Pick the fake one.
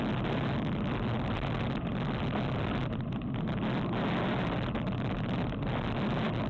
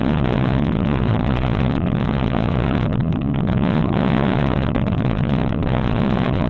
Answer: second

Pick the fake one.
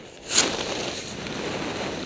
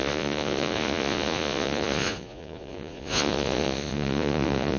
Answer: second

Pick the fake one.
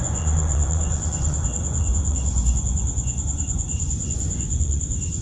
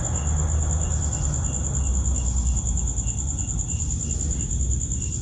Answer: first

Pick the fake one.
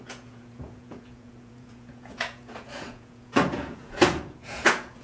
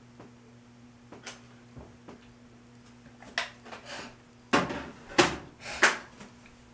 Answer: first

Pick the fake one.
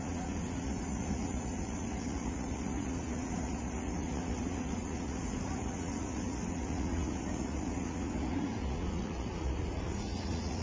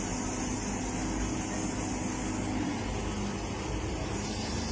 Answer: first